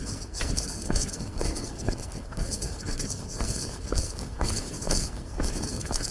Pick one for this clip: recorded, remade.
remade